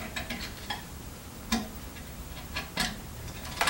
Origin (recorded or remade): remade